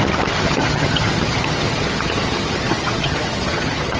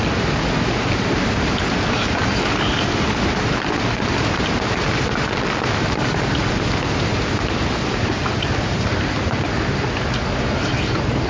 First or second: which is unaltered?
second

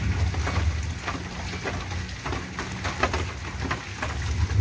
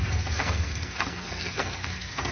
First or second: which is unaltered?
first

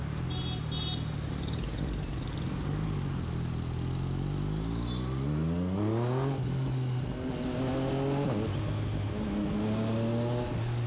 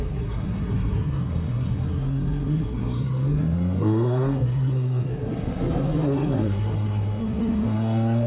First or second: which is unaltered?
first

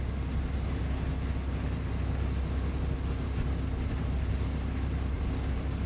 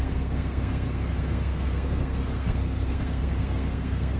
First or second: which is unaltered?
first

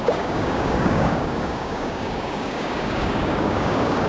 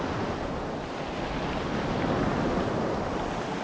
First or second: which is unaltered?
second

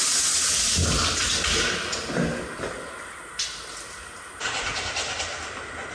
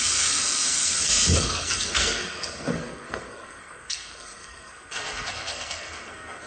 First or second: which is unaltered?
first